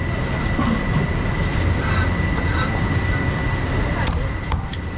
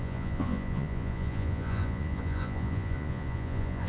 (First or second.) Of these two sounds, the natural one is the first